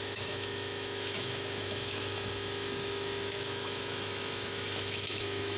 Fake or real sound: fake